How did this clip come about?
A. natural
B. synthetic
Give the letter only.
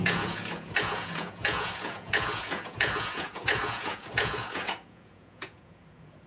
B